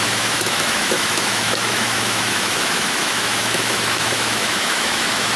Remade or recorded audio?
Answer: remade